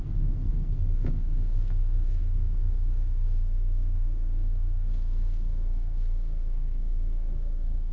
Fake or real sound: fake